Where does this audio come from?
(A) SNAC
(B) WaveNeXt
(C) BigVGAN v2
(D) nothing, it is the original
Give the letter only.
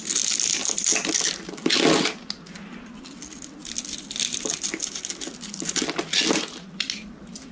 D